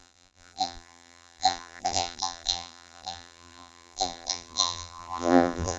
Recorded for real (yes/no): no